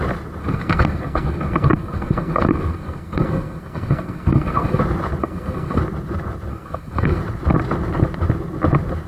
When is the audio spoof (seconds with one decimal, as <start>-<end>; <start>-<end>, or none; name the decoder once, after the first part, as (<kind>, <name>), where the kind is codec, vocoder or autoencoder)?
0.4-4.8 (codec, SNAC); 5.2-5.8; 6.5-7.2